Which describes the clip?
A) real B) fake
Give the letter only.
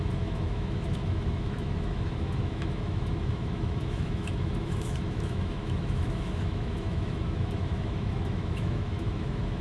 B